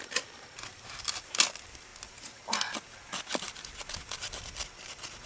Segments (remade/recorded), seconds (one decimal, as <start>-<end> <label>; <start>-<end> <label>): 0.0-5.3 recorded